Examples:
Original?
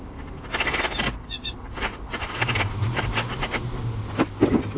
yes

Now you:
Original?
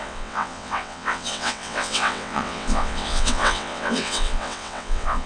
no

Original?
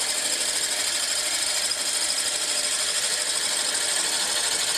yes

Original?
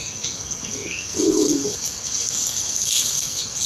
no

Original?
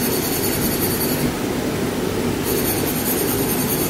yes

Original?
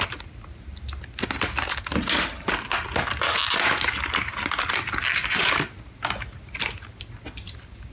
yes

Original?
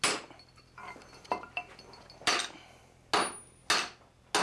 yes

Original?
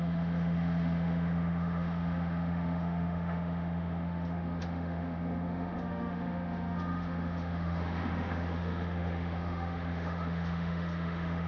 no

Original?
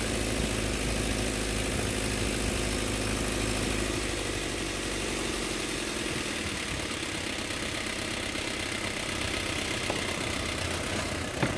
yes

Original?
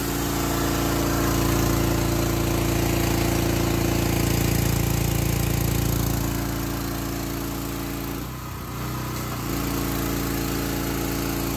yes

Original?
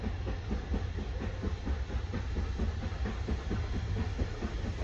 yes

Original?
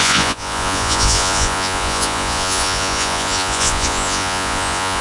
no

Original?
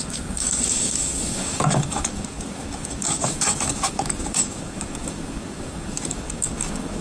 no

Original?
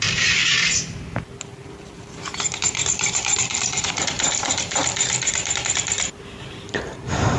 no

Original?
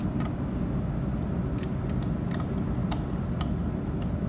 yes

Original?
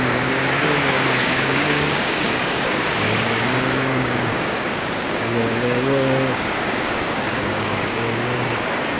no